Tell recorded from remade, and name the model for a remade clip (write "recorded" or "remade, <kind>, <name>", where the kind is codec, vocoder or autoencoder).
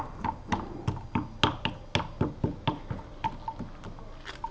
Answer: recorded